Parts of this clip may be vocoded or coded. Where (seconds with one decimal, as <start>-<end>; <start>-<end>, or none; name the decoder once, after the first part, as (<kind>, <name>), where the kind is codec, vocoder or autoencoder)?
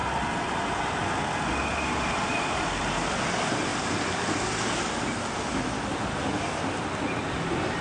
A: 0.0-1.1 (vocoder, BigVGAN v2); 1.7-3.0